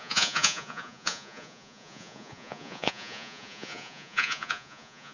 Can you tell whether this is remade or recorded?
remade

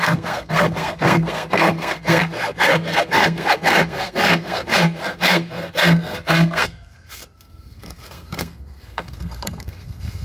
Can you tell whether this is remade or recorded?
remade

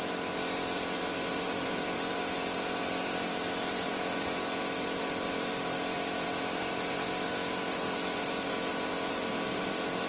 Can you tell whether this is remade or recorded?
remade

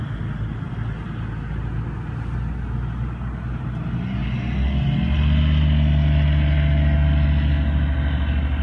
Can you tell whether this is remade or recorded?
recorded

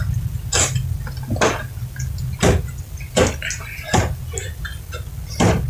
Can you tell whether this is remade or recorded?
recorded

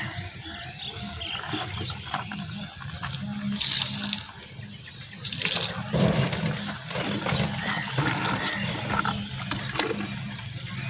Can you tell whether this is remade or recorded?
recorded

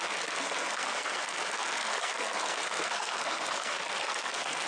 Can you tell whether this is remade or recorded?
remade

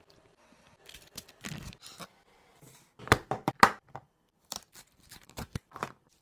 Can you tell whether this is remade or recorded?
remade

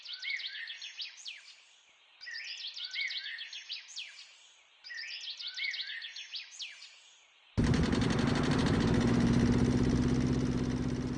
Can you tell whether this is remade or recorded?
recorded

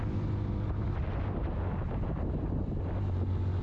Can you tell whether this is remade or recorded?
recorded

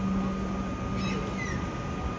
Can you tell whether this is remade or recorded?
recorded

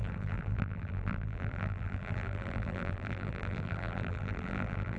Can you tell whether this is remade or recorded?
remade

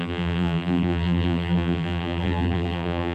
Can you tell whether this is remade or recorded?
remade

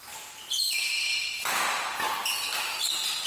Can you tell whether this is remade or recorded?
recorded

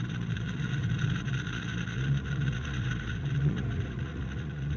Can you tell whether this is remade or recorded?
remade